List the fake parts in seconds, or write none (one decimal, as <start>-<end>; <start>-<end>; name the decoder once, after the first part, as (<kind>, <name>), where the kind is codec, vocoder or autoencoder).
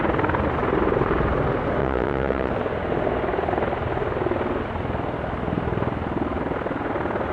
1.8-2.5 (vocoder, Vocos)